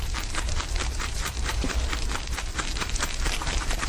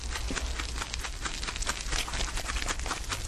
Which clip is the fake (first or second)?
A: first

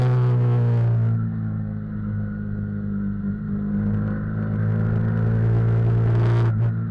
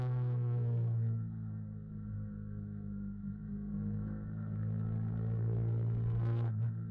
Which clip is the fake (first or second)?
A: second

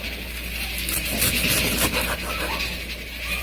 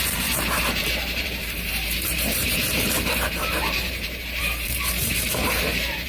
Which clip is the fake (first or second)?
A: second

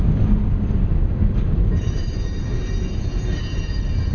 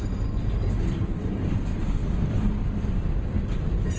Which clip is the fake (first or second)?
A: second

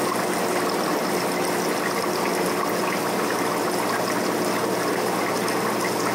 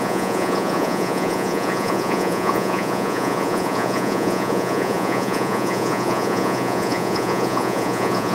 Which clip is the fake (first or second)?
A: second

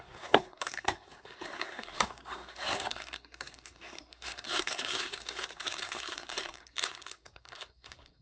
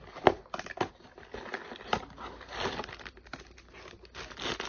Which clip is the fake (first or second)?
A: first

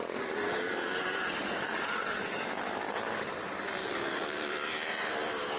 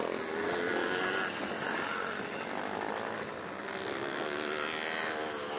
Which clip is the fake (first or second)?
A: first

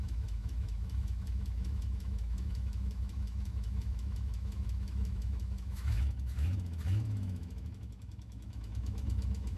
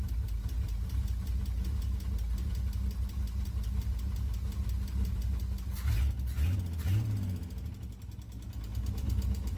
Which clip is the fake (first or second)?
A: first